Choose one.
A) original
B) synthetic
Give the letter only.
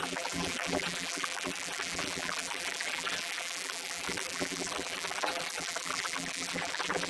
B